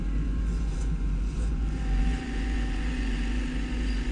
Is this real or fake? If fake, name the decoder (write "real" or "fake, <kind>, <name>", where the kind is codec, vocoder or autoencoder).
fake, vocoder, Vocos